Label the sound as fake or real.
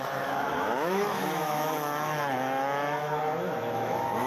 fake